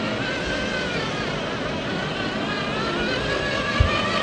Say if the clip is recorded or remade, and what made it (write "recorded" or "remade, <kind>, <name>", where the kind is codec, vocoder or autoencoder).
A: recorded